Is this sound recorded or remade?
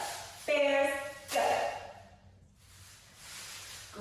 recorded